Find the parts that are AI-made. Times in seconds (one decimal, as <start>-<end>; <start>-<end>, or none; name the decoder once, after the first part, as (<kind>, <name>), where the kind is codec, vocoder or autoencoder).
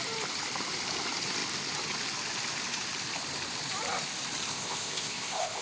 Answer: 4.5-5.6 (codec, ZipCodec)